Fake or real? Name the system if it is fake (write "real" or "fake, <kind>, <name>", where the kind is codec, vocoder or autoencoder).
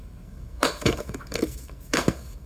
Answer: fake, codec, SNAC